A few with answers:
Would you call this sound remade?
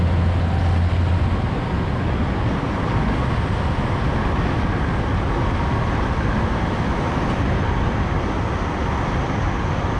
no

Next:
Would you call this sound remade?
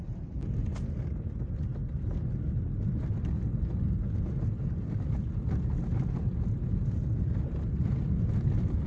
no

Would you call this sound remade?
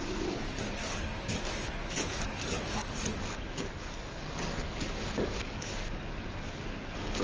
yes